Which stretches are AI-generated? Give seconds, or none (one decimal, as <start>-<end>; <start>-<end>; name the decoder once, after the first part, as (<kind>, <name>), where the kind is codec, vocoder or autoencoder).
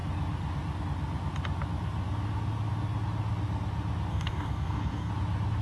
4.1-5.1 (codec, DAC)